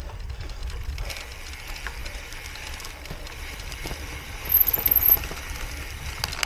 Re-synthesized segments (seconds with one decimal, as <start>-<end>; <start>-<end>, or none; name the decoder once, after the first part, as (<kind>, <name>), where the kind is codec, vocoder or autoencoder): 2.0-5.9 (vocoder, BigVGAN v2)